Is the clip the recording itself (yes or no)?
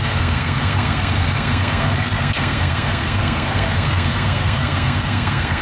no